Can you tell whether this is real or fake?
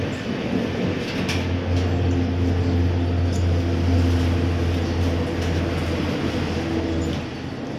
real